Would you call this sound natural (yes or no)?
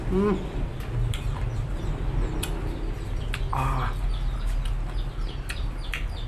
yes